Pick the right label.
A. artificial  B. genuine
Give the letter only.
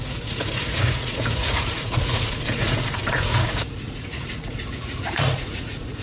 A